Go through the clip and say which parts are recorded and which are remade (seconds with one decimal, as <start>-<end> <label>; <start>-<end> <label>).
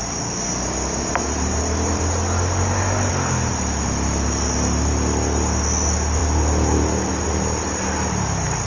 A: 0.0-8.7 recorded